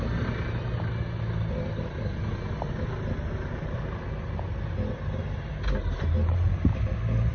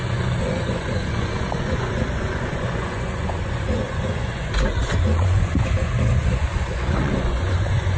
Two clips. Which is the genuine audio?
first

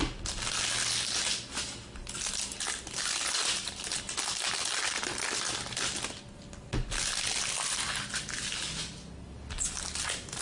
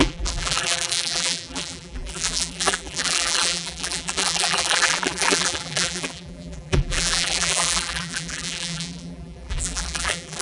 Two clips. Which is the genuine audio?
first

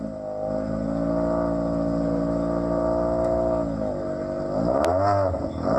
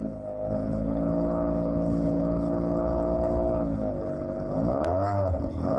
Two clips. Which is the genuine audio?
first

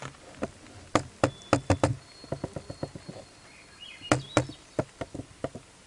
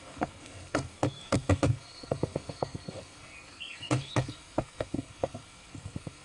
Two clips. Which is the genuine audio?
first